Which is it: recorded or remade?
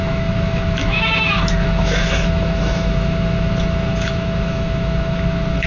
remade